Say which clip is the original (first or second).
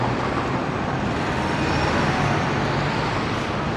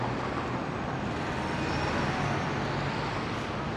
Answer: second